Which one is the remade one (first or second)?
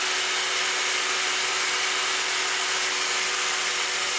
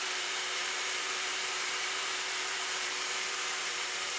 second